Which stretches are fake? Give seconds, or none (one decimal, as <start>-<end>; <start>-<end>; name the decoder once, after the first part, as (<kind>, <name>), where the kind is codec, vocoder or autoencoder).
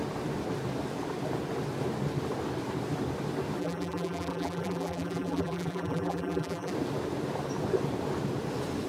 3.6-6.7 (vocoder, BigVGAN v2)